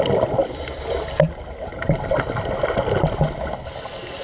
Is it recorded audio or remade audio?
recorded